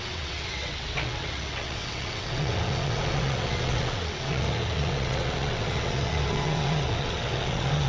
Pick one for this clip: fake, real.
fake